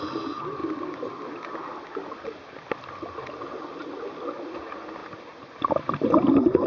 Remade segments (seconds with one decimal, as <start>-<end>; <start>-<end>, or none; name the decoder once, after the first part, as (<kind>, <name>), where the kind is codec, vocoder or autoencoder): none